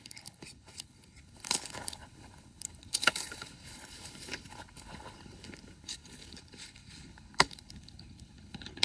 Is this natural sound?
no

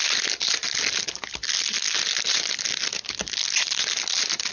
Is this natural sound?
yes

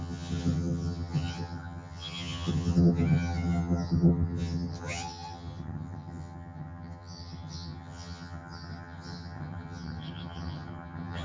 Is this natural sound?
no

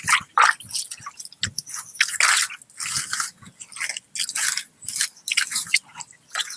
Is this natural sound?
yes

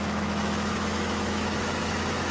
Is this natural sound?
no